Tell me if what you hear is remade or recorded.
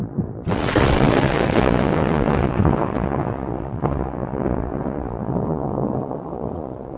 remade